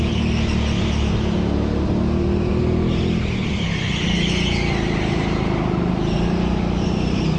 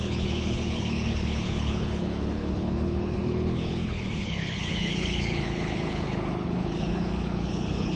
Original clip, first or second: first